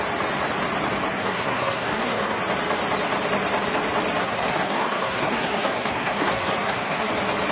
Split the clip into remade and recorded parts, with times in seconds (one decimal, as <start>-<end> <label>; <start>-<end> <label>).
0.0-1.1 recorded; 1.1-2.4 remade; 2.4-4.2 recorded; 4.2-7.1 remade; 7.1-7.5 recorded